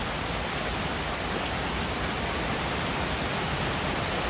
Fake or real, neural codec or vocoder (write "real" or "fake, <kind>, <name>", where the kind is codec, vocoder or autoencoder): real